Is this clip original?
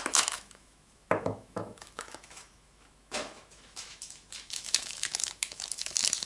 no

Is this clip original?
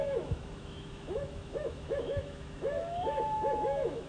no